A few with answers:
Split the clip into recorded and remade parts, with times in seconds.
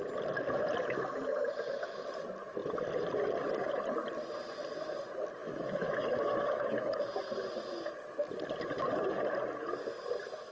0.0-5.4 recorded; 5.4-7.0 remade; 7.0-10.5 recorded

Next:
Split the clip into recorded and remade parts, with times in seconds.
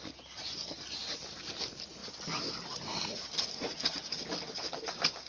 0.0-5.3 recorded